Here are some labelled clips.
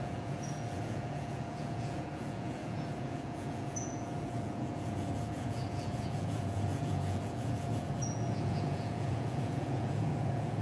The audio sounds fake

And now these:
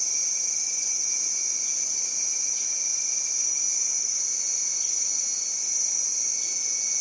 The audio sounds real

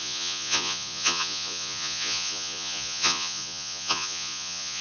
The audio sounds fake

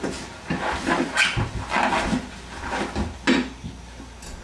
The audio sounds real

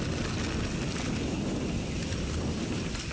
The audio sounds real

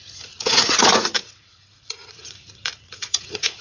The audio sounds fake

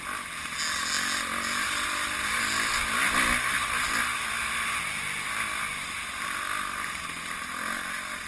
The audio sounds real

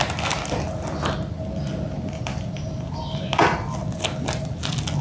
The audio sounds real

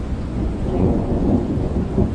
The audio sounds fake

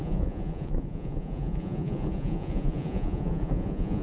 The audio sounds fake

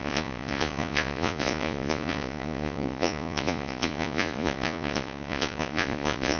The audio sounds fake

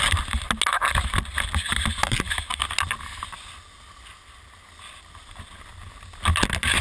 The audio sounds real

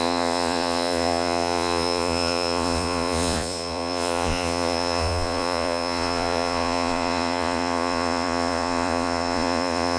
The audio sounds fake